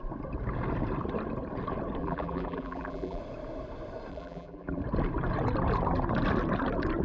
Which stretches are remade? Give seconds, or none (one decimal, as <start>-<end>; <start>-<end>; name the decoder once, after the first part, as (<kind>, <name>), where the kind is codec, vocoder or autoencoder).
2.0-3.2 (vocoder, BigVGAN v2); 4.1-4.8